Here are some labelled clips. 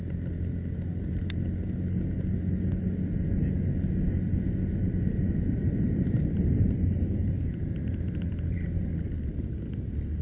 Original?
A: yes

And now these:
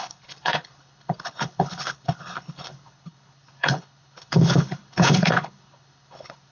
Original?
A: no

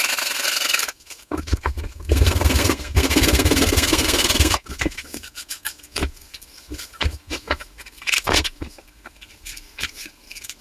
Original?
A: no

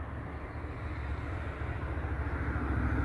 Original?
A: yes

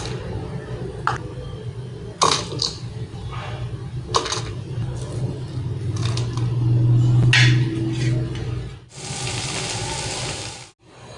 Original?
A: yes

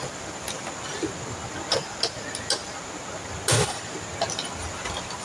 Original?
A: yes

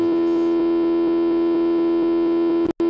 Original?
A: yes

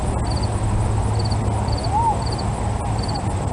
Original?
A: yes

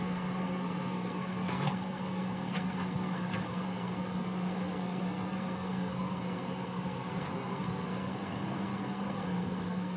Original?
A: no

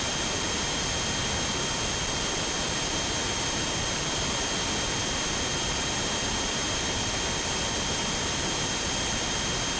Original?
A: yes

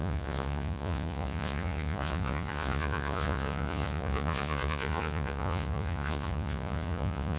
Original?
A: no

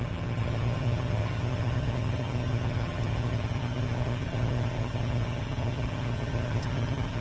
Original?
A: no